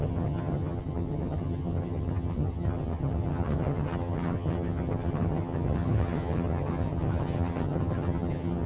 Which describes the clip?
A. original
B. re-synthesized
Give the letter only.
B